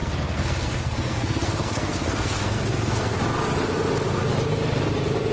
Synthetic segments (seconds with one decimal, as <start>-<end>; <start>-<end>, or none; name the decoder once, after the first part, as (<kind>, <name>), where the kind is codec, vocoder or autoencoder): 0.0-3.2 (codec, SNAC)